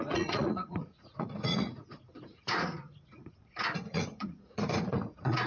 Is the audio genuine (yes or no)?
no